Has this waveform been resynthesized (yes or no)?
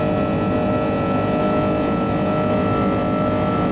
no